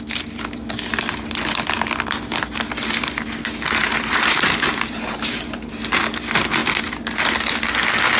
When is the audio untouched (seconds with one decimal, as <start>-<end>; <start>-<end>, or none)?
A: 0.0-3.8; 5.7-8.2